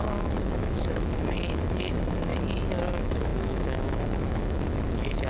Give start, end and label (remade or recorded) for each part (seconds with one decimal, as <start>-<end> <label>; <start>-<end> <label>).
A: 0.0-2.3 remade; 2.3-2.9 recorded; 2.9-5.3 remade